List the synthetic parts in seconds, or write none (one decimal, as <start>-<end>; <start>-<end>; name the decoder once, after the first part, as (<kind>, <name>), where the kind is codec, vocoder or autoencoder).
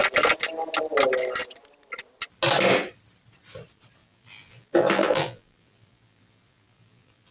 4.0-7.3 (vocoder, BigVGAN v2)